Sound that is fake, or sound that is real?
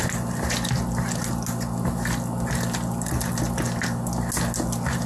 real